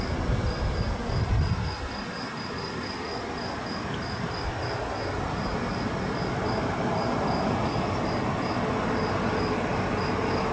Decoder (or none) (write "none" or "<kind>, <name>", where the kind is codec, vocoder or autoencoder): none